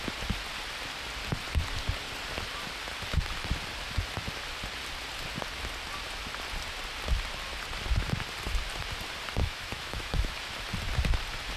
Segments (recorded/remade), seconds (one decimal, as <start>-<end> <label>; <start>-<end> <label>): 0.0-9.4 recorded; 9.4-10.3 remade; 10.3-11.6 recorded